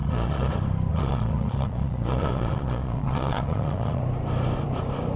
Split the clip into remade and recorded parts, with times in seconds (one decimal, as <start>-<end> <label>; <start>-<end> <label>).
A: 0.0-0.5 remade; 0.5-0.9 recorded; 0.9-4.0 remade; 4.0-5.2 recorded